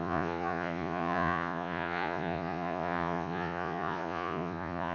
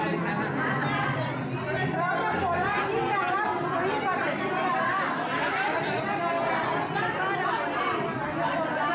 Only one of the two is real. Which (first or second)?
second